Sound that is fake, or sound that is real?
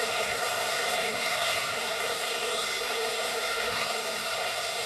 fake